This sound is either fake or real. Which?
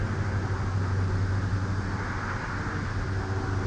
real